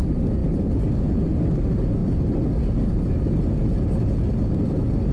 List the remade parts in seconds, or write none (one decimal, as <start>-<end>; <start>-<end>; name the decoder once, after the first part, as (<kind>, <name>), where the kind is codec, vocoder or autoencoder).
none